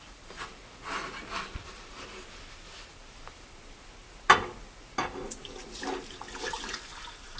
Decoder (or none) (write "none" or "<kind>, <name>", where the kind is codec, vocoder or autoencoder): none